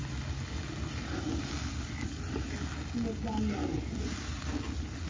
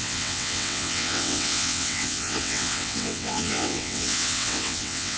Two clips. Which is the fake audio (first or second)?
second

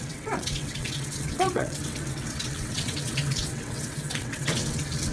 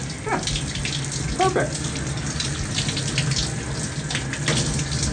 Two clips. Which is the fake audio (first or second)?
first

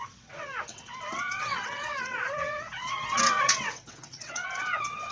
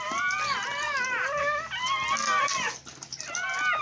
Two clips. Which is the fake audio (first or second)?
first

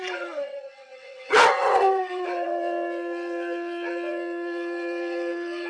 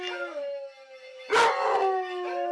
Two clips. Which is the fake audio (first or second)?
first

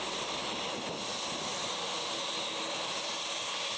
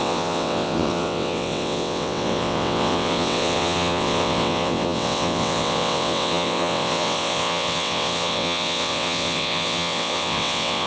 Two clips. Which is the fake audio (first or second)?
second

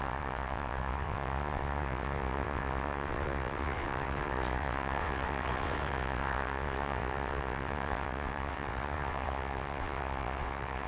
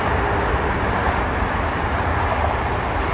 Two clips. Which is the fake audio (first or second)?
first